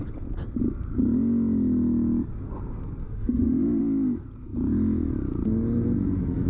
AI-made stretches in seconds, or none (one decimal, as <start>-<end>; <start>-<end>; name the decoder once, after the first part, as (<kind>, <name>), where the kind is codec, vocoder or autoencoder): 3.0-3.8 (autoencoder, DAC-VAE)